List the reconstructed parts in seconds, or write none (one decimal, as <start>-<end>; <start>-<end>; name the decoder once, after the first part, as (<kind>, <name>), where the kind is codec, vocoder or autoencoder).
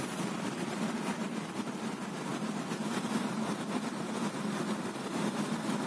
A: none